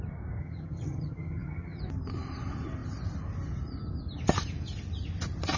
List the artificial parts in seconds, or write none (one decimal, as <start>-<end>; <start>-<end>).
0.4-1.8

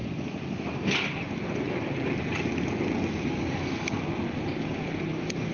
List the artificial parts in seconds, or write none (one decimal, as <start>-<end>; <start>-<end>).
none

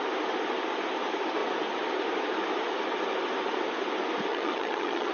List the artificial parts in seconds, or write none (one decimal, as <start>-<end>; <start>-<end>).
4.3-5.1